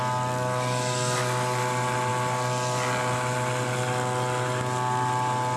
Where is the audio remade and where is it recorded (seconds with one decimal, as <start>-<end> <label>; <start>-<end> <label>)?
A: 0.0-5.6 recorded